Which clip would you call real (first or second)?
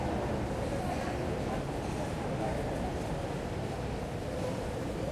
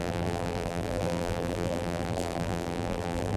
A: first